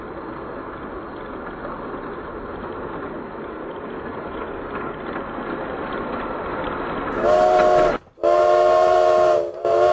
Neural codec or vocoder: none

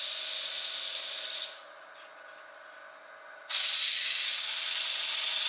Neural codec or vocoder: none